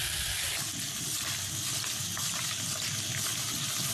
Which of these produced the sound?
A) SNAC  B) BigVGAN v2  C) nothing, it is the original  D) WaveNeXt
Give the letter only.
C